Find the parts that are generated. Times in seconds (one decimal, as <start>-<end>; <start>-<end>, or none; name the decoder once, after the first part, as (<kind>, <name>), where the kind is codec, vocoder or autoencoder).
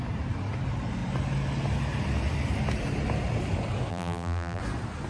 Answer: 3.9-4.6 (vocoder, BigVGAN v2)